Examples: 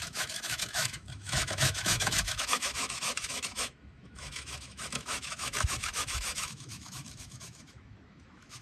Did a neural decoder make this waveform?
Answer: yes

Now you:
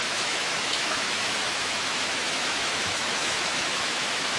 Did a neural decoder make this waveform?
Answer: yes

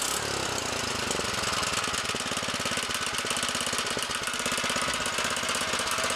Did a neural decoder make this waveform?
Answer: no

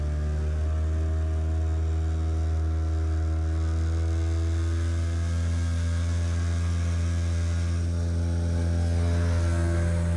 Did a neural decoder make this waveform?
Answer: no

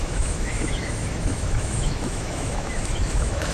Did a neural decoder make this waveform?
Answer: yes